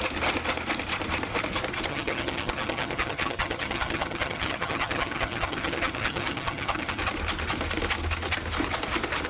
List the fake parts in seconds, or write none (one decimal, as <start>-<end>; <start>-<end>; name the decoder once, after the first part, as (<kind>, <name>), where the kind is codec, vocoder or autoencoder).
1.9-7.0 (vocoder, HiFi-GAN)